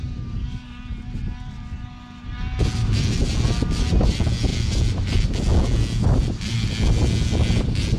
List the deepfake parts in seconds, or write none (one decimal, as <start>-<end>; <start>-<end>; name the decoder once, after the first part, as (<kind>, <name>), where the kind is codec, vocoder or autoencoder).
none